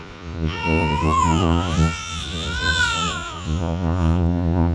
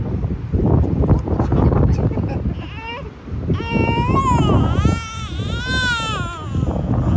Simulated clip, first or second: first